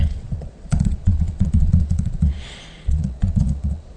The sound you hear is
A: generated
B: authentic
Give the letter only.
A